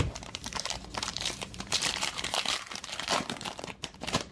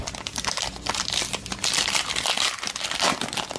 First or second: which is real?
second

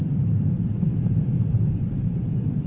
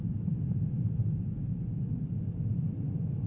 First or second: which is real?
second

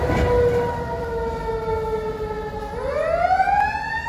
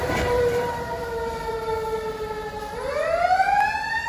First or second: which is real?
first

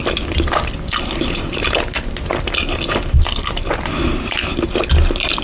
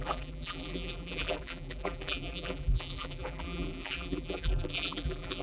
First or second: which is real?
first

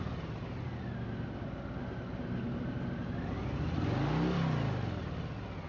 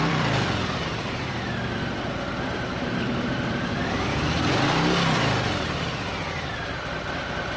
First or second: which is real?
first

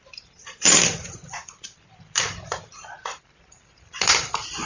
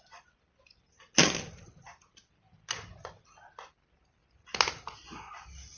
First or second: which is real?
second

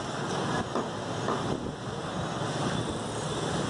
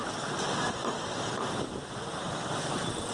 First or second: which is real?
first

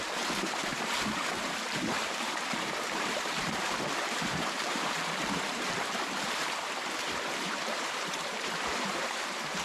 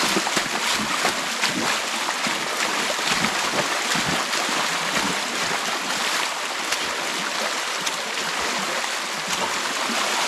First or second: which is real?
second